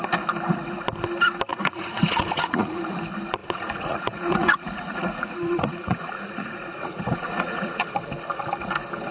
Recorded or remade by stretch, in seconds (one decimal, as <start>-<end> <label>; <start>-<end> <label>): 0.0-1.5 recorded; 1.5-2.8 remade; 2.8-3.4 recorded; 3.4-7.9 remade; 7.9-9.1 recorded